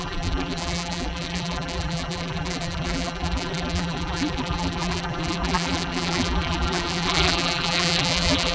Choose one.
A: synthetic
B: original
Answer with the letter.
A